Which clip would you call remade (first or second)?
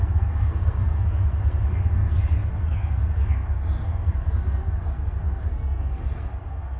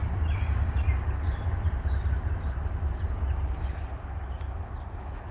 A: first